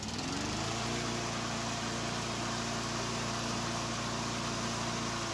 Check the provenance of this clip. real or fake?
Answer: fake